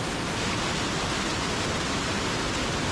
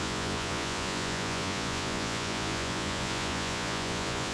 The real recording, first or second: first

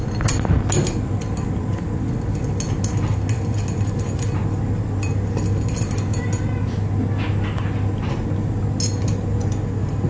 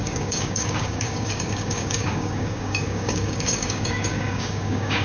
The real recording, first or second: first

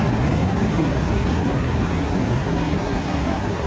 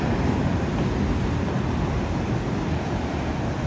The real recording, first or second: second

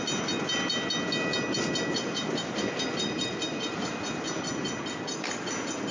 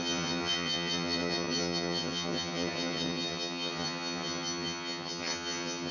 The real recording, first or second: first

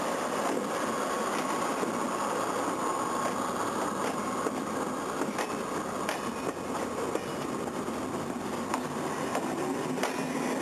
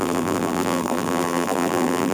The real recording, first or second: first